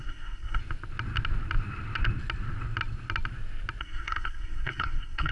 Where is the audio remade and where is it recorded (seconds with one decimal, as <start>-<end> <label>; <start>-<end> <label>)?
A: 0.0-0.6 remade; 0.6-3.8 recorded; 3.8-5.3 remade